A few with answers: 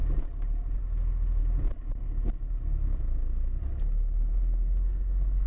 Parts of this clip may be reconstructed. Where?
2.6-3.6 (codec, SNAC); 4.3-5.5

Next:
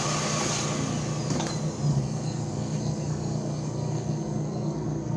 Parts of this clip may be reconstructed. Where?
1.9-5.2 (codec, SNAC)

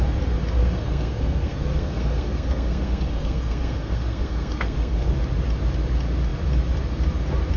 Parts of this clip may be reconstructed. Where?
0.6-5.1 (codec, SNAC)

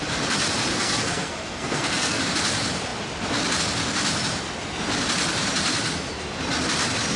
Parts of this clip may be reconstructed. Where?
0.7-2.2 (codec, SNAC)